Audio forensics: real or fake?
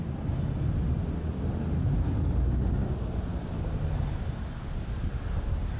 real